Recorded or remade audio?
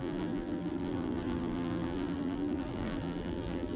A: remade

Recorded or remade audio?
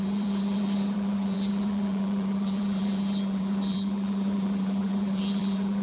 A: remade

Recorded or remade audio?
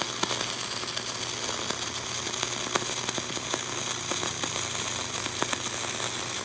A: recorded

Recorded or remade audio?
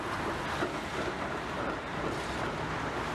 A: recorded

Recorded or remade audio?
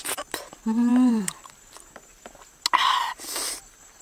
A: recorded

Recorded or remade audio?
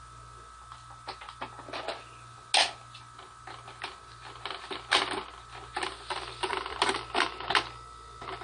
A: recorded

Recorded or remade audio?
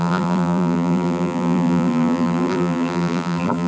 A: remade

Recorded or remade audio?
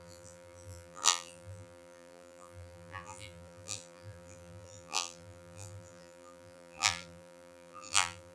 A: remade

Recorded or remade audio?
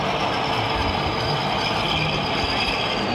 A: recorded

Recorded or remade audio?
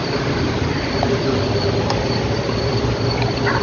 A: remade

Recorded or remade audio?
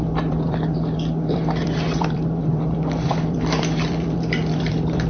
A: remade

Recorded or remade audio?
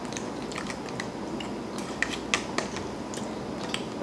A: recorded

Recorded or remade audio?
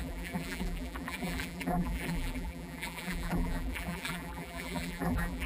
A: remade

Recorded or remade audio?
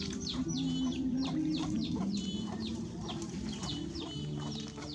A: remade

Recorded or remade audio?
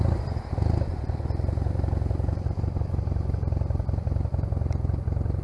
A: remade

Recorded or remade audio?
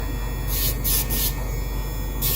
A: recorded